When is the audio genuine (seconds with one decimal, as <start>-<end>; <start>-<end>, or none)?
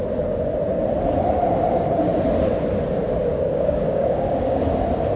0.0-3.3; 4.6-5.2